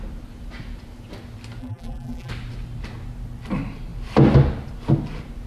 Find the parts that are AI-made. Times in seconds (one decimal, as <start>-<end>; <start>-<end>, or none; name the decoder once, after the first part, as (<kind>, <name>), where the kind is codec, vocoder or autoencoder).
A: 1.6-2.3 (vocoder, BigVGAN v2)